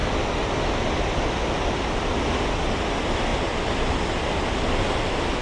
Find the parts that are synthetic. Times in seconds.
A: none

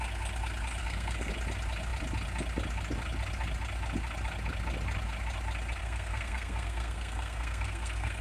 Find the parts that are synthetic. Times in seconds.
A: 0.8-1.3 (codec, SNAC); 5.8-8.2

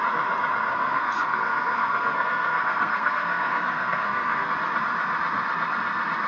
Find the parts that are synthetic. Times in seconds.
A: 0.7-4.5 (codec, SNAC)

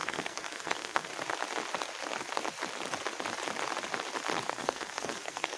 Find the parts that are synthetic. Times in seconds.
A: 0.0-1.1 (codec, SNAC); 4.5-5.6

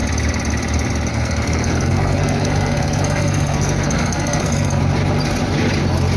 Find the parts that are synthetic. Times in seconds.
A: 1.1-4.8 (codec, SNAC)

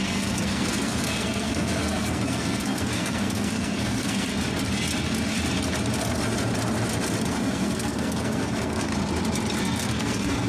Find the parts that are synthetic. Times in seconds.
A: 0.0-4.3 (codec, SNAC); 7.2-8.9; 9.6-10.5

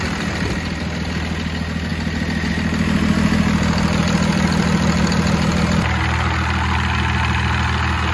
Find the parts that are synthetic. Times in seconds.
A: none

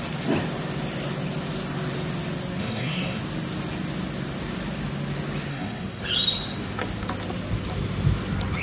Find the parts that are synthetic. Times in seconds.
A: 2.6-3.2 (codec, SNAC); 5.5-6.0